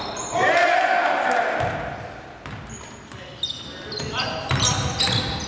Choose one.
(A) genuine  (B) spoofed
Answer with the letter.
A